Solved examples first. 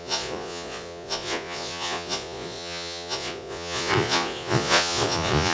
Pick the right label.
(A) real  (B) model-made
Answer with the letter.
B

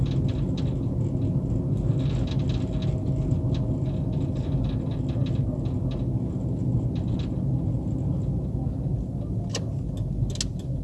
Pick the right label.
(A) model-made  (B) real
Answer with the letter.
B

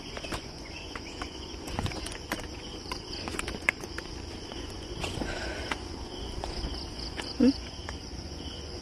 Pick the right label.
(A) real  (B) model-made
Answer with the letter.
B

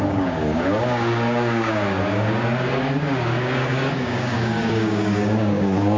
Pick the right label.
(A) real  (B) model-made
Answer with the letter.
B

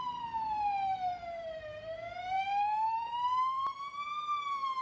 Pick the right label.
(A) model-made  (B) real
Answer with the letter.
A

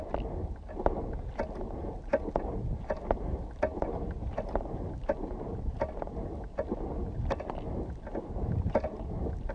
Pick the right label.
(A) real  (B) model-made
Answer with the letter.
A